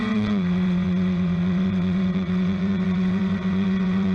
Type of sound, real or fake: fake